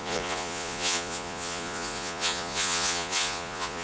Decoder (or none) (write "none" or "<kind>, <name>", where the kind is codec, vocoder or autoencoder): vocoder, Vocos